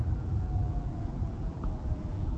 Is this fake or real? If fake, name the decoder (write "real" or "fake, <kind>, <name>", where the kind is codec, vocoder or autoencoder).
fake, vocoder, BigVGAN v2